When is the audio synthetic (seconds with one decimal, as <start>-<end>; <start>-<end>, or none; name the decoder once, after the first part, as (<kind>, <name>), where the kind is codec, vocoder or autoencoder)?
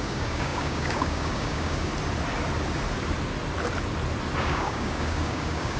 0.0-1.9 (codec, DAC); 4.4-5.8